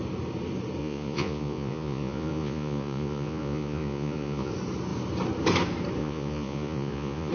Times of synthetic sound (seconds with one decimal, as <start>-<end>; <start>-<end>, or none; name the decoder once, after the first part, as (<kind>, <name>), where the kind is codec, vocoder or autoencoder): 0.8-4.5 (vocoder, Vocos); 6.0-7.3